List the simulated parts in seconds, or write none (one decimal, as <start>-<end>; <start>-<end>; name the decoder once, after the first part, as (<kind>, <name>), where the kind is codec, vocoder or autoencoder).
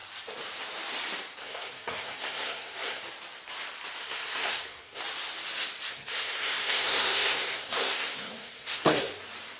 1.4-3.0 (codec, SNAC); 4.0-5.0; 5.9-9.1